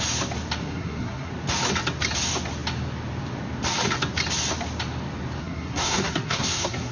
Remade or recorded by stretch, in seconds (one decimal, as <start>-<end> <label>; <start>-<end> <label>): 0.0-0.6 recorded; 0.6-1.3 remade; 1.3-5.4 recorded; 5.4-6.9 remade